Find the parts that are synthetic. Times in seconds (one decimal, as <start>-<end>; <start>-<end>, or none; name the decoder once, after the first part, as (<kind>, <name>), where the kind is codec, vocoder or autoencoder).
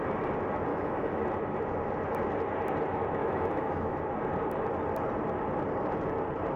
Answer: 0.7-1.2 (autoencoder, DAC-VAE); 3.2-4.0